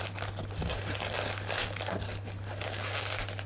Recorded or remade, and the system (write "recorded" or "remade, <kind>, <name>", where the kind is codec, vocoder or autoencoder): recorded